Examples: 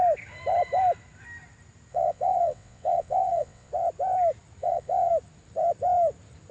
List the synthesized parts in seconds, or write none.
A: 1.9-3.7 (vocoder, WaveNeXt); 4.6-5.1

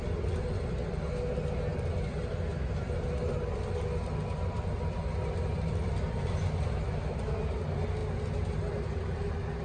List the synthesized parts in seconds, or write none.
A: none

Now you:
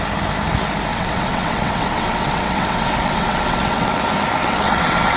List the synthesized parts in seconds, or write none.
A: 0.9-4.0 (vocoder, WaveNeXt); 4.4-5.2